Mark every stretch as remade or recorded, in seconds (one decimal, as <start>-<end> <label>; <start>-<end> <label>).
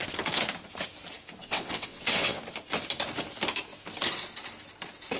0.0-1.4 recorded; 1.4-2.4 remade; 2.4-5.2 recorded